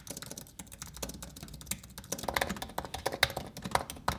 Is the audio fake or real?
real